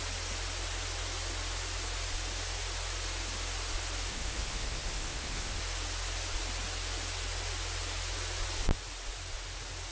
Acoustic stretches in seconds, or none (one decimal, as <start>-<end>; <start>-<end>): 0.0-4.1; 5.6-9.9